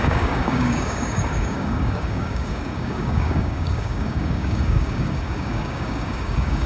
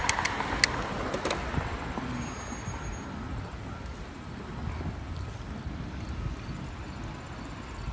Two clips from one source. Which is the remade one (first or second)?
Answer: first